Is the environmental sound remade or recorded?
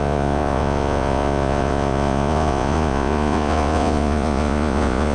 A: remade